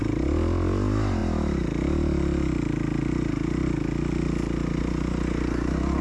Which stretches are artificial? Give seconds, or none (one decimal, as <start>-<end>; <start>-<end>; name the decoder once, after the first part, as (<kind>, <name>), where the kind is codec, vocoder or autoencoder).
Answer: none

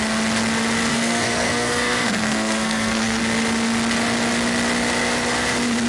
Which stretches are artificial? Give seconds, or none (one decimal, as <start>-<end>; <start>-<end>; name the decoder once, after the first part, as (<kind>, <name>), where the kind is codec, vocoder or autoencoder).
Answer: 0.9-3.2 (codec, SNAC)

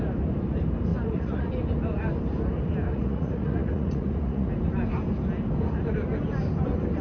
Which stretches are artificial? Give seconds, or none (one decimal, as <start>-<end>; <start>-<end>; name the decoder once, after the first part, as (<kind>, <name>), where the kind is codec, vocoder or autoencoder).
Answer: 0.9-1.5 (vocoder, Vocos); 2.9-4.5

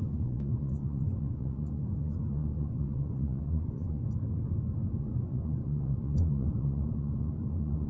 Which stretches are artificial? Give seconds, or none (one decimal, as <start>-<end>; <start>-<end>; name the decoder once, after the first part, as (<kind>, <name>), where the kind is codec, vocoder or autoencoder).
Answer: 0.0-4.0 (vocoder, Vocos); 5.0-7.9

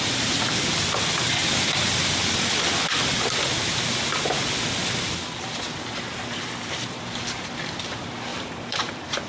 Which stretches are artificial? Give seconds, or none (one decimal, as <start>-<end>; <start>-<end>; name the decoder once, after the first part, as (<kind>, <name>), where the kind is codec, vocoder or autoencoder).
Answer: 8.3-9.3 (vocoder, BigVGAN v2)

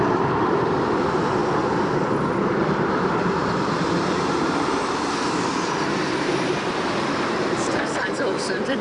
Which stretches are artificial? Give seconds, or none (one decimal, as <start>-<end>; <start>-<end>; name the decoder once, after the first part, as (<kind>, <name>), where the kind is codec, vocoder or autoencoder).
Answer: 0.0-1.4 (vocoder, BigVGAN v2); 2.5-8.8

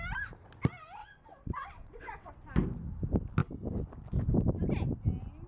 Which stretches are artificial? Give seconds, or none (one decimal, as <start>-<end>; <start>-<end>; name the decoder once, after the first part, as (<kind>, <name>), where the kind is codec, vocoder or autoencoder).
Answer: 1.0-2.3 (vocoder, WaveNeXt)